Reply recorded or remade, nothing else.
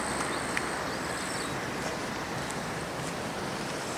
recorded